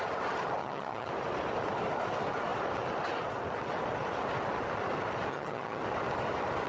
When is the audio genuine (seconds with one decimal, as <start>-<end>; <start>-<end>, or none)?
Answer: 0.0-0.6; 1.1-5.3; 5.8-6.7